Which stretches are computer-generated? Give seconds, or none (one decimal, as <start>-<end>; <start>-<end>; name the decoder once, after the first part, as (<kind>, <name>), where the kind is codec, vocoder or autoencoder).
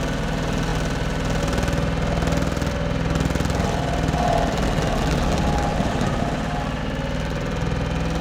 5.7-6.8 (vocoder, BigVGAN v2)